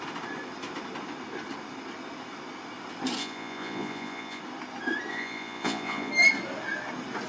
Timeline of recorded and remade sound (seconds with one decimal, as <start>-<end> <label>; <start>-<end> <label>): 0.0-3.2 recorded; 3.2-4.4 remade; 4.4-5.1 recorded; 5.1-6.1 remade; 6.1-7.3 recorded